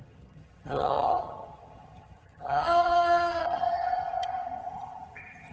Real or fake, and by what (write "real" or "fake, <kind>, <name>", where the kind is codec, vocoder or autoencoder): fake, vocoder, HiFi-GAN